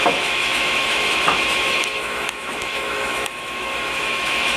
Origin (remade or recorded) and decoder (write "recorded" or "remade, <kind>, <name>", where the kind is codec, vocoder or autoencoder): remade, autoencoder, DAC-VAE